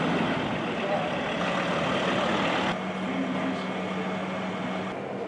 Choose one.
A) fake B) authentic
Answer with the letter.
B